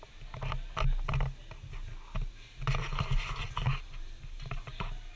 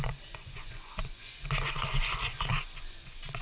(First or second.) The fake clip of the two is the second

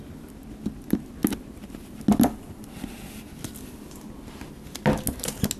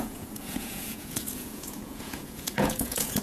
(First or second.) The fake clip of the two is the second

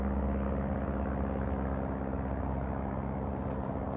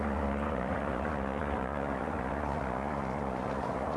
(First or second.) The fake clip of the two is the second